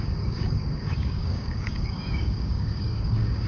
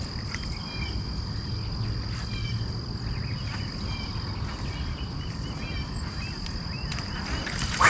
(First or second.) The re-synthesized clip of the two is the first